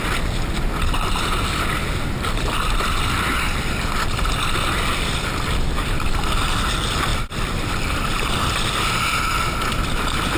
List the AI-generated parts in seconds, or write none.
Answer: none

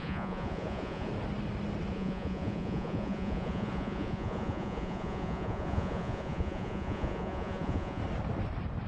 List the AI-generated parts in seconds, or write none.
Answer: 0.0-1.1 (vocoder, Vocos); 1.9-8.0

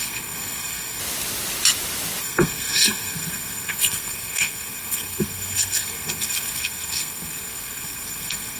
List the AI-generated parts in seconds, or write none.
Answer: 0.0-1.0 (codec, SNAC); 2.2-8.6

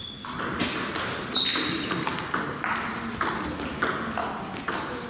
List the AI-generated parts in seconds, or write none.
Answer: none